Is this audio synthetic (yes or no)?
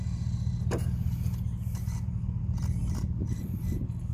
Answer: no